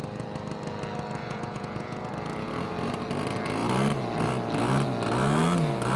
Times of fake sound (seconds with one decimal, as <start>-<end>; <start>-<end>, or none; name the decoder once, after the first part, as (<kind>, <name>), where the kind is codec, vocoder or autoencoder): 1.2-2.1 (vocoder, Vocos)